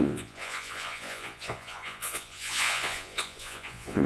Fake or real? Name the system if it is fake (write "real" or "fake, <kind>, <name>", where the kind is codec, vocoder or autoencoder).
fake, vocoder, Vocos